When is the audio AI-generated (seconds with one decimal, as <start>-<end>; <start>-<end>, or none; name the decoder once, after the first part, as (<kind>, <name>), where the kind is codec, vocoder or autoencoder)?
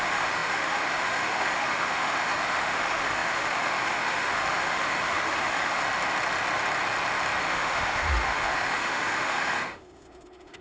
0.0-5.8 (autoencoder, DAC-VAE); 7.4-10.6